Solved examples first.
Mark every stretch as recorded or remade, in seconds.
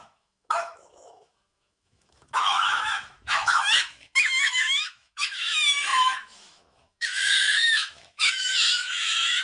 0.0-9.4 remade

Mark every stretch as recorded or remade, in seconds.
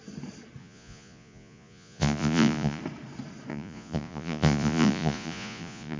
0.0-0.6 recorded; 0.6-2.8 remade; 2.8-3.5 recorded; 3.5-6.0 remade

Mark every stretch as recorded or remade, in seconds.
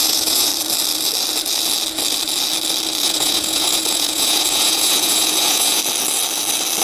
0.0-0.5 remade; 0.5-3.0 recorded; 3.0-5.8 remade; 5.8-6.8 recorded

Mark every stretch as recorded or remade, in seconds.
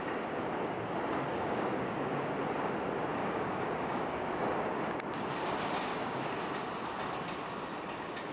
0.0-1.3 recorded; 1.3-2.3 remade; 2.3-3.2 recorded; 3.2-4.4 remade; 4.4-5.9 recorded; 5.9-6.4 remade; 6.4-8.3 recorded